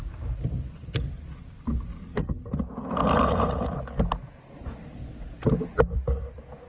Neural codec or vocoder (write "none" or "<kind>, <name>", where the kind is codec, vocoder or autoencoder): none